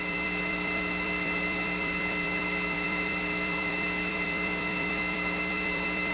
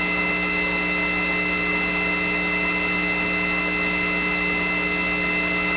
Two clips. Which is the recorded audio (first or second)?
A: second